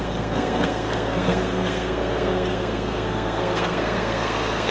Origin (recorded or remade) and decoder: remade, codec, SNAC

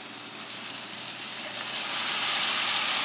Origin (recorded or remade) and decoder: remade, vocoder, BigVGAN v2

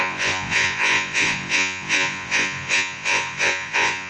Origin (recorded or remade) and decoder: remade, vocoder, Vocos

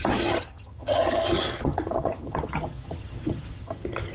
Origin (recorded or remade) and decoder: remade, vocoder, HiFi-GAN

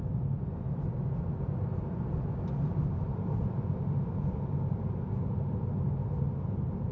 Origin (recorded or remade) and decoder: recorded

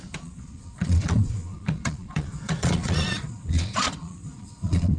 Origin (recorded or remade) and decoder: remade, vocoder, Vocos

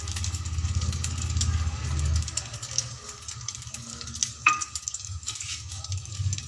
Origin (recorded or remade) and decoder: remade, codec, DAC